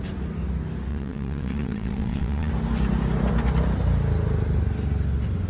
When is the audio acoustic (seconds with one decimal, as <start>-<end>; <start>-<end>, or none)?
0.0-0.9; 2.5-5.5